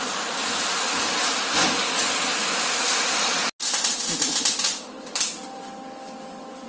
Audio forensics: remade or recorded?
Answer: recorded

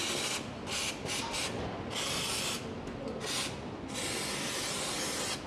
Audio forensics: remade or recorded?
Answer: recorded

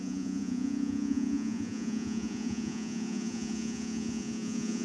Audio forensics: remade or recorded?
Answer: remade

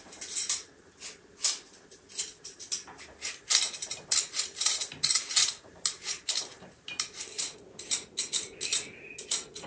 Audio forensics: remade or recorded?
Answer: recorded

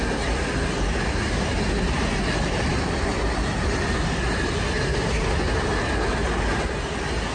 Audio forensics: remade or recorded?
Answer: recorded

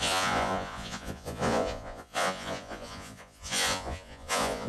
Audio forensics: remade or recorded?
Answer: remade